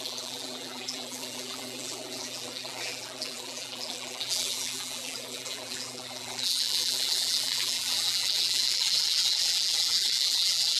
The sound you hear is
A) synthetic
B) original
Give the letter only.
A